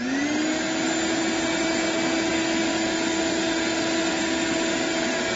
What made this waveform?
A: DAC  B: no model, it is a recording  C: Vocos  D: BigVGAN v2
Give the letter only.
B